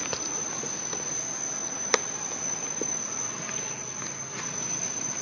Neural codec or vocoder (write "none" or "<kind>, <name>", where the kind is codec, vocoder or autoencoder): none